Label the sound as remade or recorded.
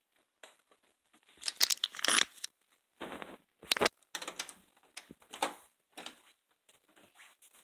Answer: recorded